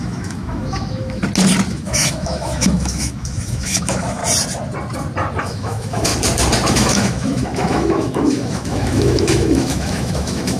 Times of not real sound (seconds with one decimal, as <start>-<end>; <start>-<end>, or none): 0.0-1.2; 1.7-4.2; 5.4-6.1; 6.7-10.6